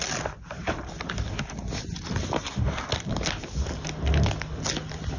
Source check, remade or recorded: recorded